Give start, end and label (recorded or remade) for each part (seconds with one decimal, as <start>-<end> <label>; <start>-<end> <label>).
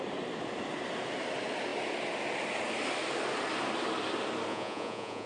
0.0-4.5 recorded; 4.5-5.3 remade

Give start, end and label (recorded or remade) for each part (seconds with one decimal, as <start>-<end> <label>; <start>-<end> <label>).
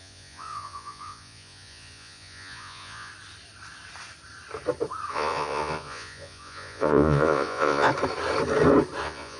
0.0-3.1 remade; 3.1-5.1 recorded; 5.1-7.9 remade; 7.9-9.0 recorded; 9.0-9.4 remade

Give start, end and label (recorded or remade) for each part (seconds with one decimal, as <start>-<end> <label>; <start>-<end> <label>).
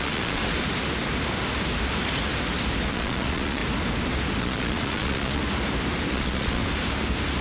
0.0-0.4 remade; 0.4-2.9 recorded; 2.9-3.6 remade; 3.6-4.4 recorded; 4.4-5.4 remade; 5.4-6.1 recorded; 6.1-6.6 remade; 6.6-7.4 recorded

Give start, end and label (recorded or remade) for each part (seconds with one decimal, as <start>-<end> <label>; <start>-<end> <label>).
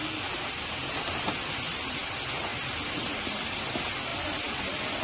0.0-5.0 recorded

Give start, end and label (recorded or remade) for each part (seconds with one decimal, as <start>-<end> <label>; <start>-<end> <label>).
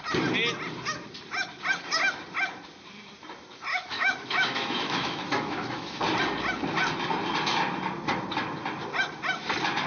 0.0-3.7 recorded; 3.7-6.0 remade; 6.0-9.9 recorded